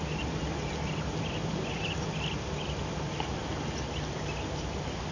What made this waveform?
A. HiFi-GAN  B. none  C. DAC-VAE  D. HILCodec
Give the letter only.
B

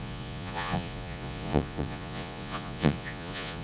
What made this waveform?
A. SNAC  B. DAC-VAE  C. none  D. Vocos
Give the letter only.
D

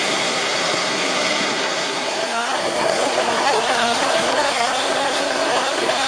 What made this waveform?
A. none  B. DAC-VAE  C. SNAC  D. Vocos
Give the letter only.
C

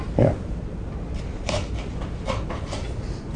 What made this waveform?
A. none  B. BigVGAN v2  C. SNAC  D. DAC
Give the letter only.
A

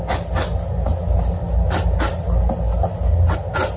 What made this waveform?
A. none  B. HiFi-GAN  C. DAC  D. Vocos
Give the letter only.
A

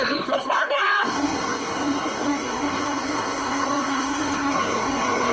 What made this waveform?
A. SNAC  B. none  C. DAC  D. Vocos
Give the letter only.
A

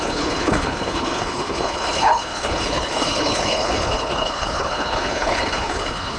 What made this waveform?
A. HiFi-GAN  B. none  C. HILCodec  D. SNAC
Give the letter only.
C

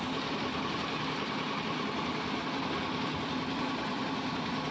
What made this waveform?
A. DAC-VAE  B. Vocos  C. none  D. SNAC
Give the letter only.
C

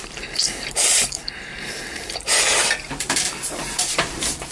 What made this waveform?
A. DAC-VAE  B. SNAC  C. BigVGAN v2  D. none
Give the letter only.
C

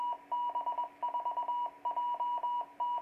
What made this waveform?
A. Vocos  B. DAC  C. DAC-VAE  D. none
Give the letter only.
D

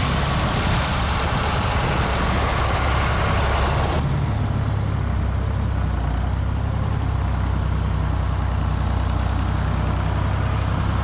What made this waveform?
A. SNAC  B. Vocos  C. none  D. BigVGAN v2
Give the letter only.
C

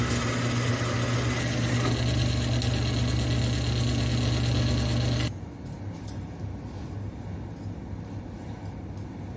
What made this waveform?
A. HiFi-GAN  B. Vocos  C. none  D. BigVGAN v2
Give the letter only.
C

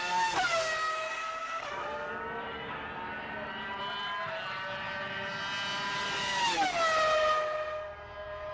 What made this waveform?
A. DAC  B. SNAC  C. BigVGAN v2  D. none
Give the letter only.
D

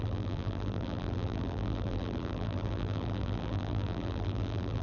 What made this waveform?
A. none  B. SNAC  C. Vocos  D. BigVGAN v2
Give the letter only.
D